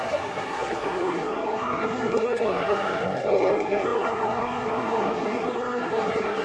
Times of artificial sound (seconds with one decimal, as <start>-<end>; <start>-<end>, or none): 0.0-6.4

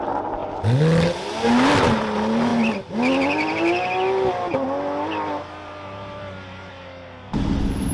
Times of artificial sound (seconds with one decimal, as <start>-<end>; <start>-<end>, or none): none

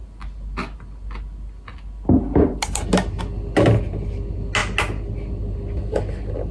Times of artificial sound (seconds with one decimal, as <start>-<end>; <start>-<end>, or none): none